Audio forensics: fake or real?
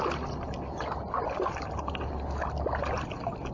real